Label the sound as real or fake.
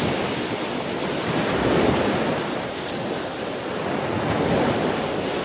real